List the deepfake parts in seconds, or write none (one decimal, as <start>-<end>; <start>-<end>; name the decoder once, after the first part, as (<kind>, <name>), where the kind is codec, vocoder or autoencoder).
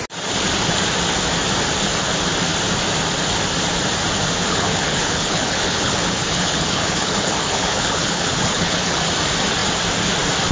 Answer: 4.5-9.1 (codec, HILCodec)